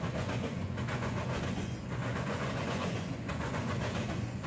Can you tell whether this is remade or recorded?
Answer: remade